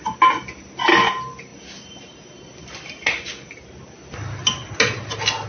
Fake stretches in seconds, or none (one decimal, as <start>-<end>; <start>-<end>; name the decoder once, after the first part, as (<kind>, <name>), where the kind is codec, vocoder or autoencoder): none